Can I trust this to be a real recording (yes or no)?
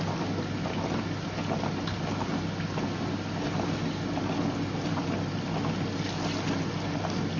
yes